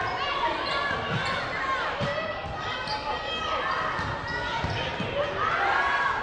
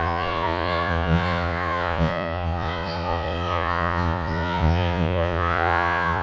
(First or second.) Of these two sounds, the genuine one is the first